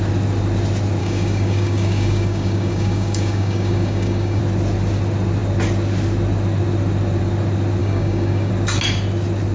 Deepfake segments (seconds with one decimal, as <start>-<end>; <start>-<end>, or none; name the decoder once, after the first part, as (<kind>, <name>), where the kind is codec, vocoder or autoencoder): 1.0-4.4 (codec, DAC); 7.8-8.5